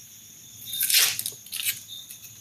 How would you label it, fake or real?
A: real